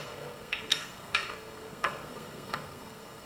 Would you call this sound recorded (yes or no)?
no